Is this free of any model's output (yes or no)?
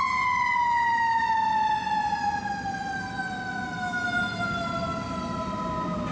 yes